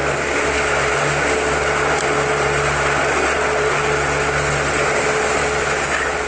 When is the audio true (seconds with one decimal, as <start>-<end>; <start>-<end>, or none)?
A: 0.0-6.3